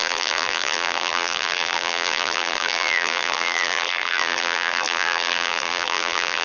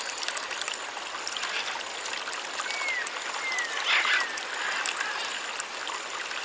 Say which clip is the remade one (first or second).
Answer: first